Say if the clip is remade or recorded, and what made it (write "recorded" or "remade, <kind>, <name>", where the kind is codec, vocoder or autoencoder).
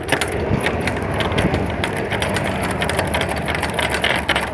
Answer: recorded